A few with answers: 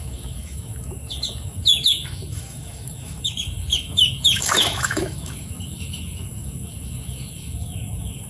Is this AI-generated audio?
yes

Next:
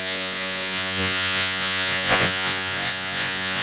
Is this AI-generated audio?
yes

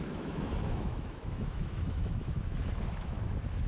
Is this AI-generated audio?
yes